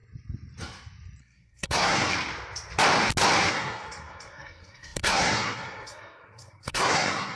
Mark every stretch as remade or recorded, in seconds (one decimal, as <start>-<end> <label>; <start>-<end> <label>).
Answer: 0.0-1.2 recorded; 1.2-2.1 remade; 2.1-3.5 recorded; 3.5-7.4 remade